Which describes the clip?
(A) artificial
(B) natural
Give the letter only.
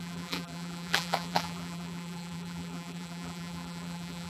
A